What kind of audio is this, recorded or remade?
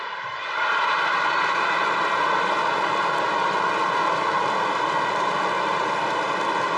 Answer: recorded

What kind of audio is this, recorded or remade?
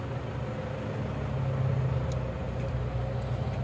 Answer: recorded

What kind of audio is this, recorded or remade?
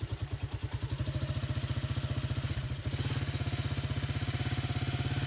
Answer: recorded